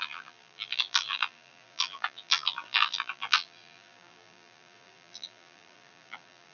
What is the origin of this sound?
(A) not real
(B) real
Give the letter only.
A